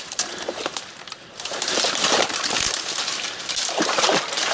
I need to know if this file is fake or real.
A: fake